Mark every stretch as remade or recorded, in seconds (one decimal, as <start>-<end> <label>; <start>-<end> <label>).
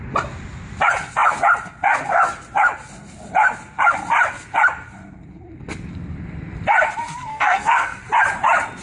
0.0-7.3 recorded; 7.3-8.0 remade; 8.0-8.8 recorded